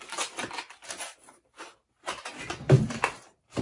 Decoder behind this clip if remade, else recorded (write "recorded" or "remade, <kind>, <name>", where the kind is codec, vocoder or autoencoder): recorded